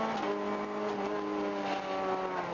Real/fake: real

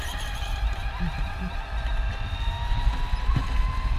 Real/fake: real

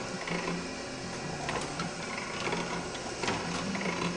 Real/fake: real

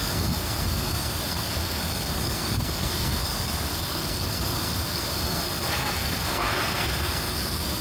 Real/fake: fake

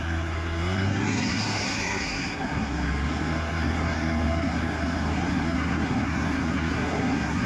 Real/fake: fake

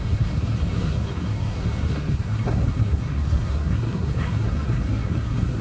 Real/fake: fake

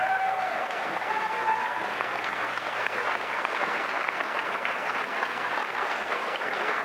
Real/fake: fake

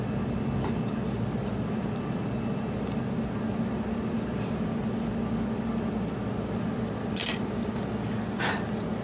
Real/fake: real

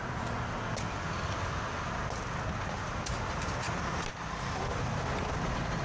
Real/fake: real